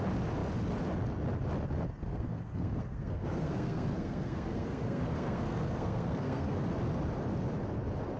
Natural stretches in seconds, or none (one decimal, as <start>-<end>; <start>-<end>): 0.0-2.1; 6.7-8.2